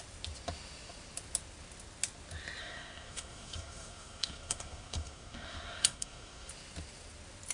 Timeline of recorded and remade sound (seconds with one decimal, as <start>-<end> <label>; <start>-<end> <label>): 0.0-2.6 recorded; 2.6-6.5 remade; 6.5-7.5 recorded

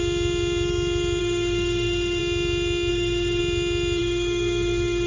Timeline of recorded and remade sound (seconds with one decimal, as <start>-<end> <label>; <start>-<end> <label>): 0.0-1.2 recorded; 1.2-2.2 remade; 2.2-2.9 recorded; 2.9-3.4 remade; 3.4-4.0 recorded; 4.0-5.1 remade

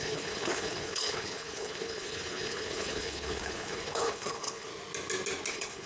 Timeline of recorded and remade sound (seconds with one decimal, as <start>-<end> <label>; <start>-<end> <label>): 0.0-4.7 remade; 4.7-5.5 recorded; 5.5-5.9 remade

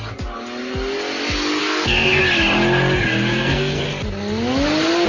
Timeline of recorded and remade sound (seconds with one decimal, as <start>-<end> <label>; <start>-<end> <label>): 0.0-1.6 recorded; 1.6-2.2 remade; 2.2-3.3 recorded; 3.3-3.8 remade; 3.8-5.1 recorded

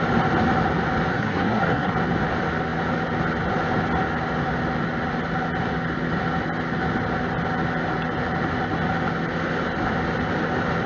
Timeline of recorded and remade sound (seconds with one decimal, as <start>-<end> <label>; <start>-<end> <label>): 0.0-1.1 recorded; 1.1-1.9 remade; 1.9-10.9 recorded